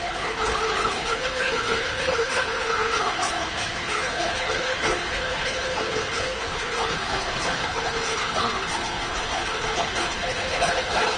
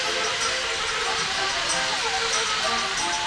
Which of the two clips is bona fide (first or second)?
second